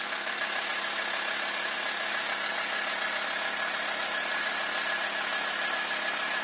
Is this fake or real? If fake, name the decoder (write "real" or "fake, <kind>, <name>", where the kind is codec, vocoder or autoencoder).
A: real